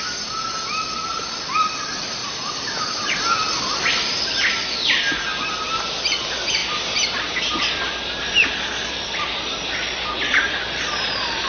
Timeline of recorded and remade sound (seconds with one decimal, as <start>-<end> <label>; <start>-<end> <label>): 0.0-2.2 recorded; 2.2-2.8 remade; 2.8-3.4 recorded; 3.4-3.9 remade; 3.9-8.4 recorded; 8.4-9.3 remade; 9.3-11.5 recorded